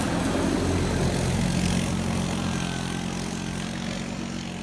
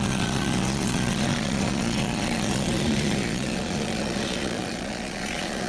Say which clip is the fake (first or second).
second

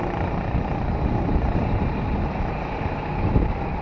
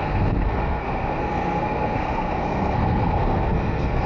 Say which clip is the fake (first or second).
second